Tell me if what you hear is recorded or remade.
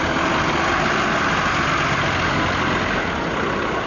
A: recorded